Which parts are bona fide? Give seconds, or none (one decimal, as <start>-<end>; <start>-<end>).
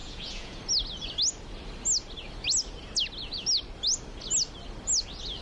0.6-5.4